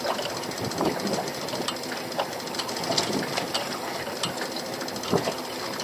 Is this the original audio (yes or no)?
yes